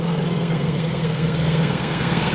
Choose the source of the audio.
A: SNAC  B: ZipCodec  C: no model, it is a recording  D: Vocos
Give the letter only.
A